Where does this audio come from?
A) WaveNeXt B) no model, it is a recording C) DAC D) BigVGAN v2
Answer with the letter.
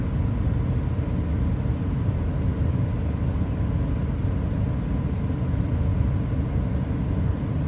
B